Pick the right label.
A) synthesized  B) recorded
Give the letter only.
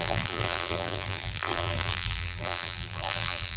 A